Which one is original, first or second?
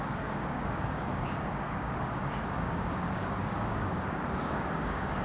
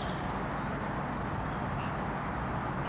second